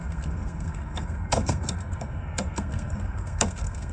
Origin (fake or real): fake